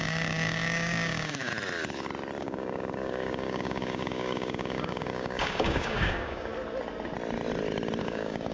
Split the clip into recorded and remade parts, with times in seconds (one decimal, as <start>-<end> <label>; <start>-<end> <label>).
0.0-1.5 remade; 1.5-2.4 recorded; 2.4-6.5 remade; 6.5-8.0 recorded; 8.0-8.5 remade